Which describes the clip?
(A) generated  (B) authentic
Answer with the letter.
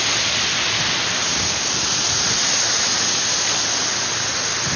B